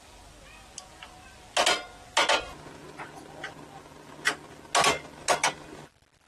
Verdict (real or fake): real